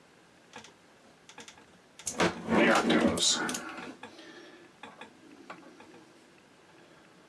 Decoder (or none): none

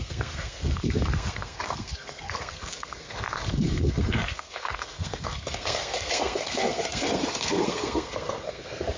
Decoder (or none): codec, SNAC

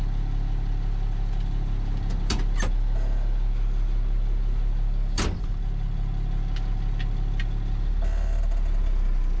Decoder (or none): none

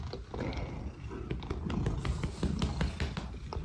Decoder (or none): none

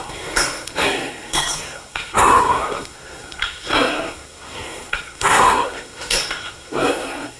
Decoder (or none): codec, SNAC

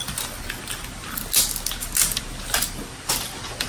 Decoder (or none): none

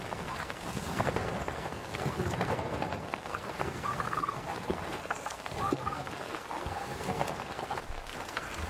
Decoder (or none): codec, SNAC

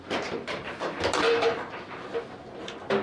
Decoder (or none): none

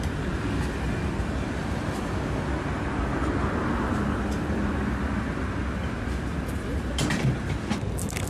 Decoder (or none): none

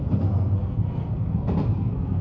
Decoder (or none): codec, SNAC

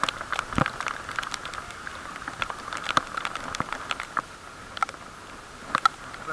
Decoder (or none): none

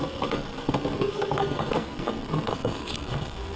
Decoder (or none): codec, SNAC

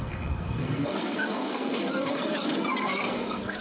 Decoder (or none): codec, SNAC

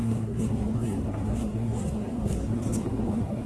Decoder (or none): codec, SNAC